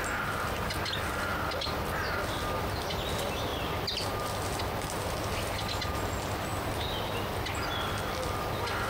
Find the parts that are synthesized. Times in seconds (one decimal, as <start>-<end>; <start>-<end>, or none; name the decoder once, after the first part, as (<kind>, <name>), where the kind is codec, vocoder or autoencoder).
none